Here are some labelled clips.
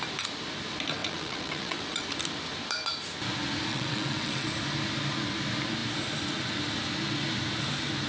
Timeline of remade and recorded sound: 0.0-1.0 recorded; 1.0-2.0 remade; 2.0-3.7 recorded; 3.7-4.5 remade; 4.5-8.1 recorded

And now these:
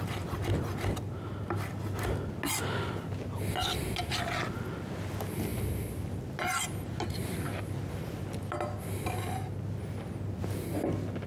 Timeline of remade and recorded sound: 0.0-11.3 recorded

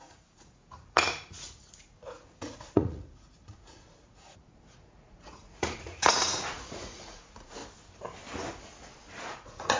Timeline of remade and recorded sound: 0.0-7.6 remade; 7.6-9.2 recorded; 9.2-9.8 remade

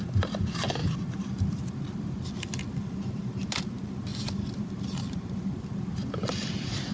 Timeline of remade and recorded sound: 0.0-6.9 recorded